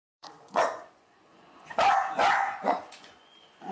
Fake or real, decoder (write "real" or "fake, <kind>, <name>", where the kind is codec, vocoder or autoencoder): fake, vocoder, Vocos